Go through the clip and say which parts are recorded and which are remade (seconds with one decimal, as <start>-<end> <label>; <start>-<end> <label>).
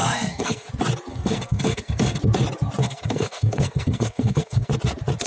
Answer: 0.0-0.7 remade; 0.7-1.1 recorded; 1.1-2.2 remade; 2.2-2.8 recorded; 2.8-4.7 remade; 4.7-5.3 recorded